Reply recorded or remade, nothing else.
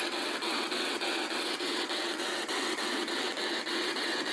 remade